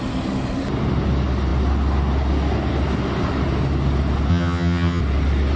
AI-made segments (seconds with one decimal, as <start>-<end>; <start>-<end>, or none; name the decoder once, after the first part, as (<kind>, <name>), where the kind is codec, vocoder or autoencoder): 4.3-5.0 (vocoder, HiFi-GAN)